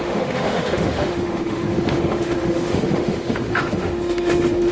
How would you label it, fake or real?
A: fake